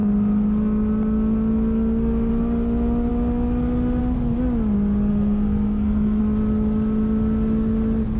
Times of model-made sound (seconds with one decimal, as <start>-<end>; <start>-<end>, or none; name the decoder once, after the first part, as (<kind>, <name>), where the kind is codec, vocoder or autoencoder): 5.1-6.2 (codec, SNAC)